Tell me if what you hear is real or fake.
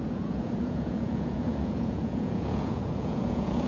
fake